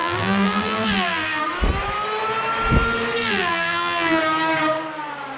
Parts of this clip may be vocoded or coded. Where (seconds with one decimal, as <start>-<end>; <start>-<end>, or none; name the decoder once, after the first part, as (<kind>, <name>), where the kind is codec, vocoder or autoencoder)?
0.0-1.4 (vocoder, BigVGAN v2); 3.2-4.2